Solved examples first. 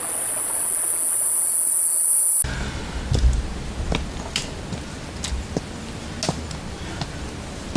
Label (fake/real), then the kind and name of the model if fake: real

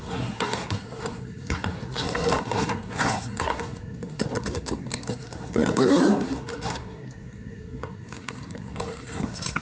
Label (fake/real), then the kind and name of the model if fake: fake, codec, SNAC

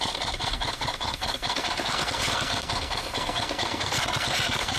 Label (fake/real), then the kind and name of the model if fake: fake, codec, SNAC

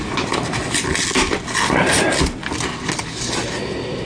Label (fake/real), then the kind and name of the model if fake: real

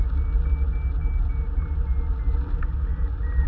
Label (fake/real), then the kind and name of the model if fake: real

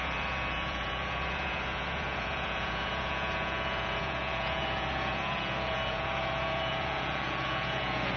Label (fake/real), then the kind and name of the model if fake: fake, vocoder, Vocos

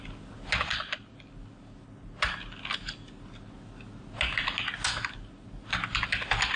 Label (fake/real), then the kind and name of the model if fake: real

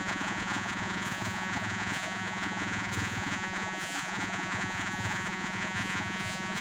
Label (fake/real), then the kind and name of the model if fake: fake, vocoder, Vocos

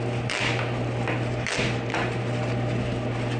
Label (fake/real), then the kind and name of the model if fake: real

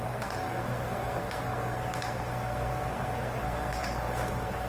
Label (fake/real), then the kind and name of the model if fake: fake, codec, SNAC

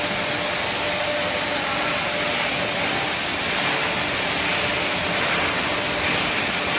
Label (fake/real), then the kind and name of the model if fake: real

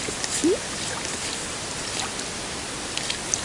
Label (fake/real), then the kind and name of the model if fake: real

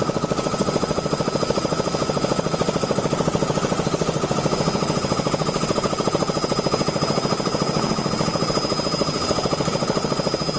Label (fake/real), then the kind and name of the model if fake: real